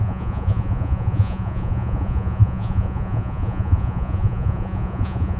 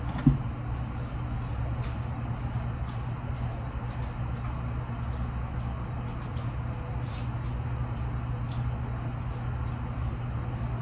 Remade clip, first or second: first